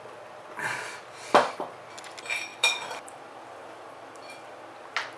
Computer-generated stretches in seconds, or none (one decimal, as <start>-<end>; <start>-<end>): 2.5-4.4